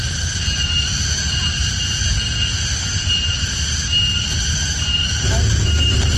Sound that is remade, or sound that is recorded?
recorded